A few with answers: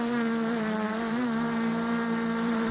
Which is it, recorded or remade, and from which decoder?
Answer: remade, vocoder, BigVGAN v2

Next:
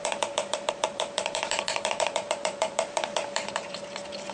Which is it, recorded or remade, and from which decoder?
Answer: remade, vocoder, BigVGAN v2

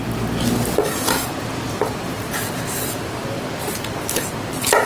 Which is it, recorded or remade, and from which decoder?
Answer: recorded